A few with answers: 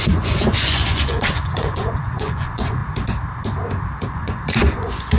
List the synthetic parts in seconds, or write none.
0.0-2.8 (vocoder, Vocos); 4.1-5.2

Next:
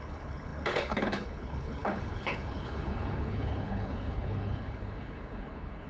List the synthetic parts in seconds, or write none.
0.0-5.9 (codec, HILCodec)

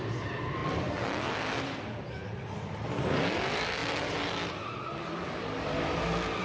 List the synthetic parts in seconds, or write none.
none

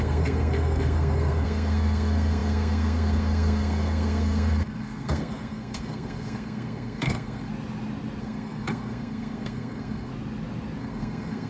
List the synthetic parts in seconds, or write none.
0.0-7.5 (codec, SNAC); 8.2-10.1; 10.8-11.5

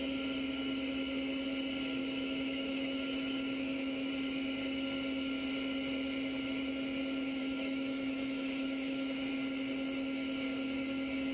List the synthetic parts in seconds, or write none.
2.0-4.1 (autoencoder, DAC-VAE); 7.4-9.3